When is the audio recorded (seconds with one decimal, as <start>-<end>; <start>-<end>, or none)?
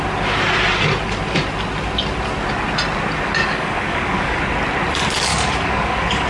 0.0-3.4; 4.4-5.3